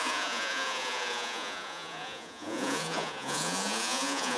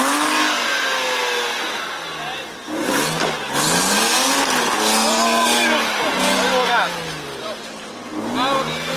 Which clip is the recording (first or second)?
second